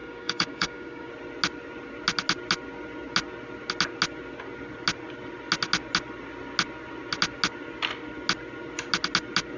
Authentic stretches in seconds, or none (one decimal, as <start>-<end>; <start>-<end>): 1.1-9.6

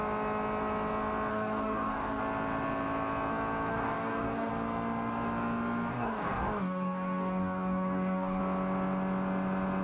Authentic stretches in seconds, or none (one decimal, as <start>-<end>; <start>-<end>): 0.0-1.3; 2.2-3.7; 4.5-5.9; 8.4-9.8

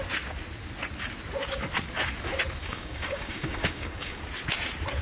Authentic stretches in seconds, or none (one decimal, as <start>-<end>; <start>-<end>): 0.0-2.6; 4.2-5.0

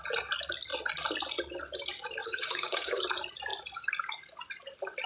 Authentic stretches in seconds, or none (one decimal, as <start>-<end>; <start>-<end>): 0.0-2.2; 3.0-5.1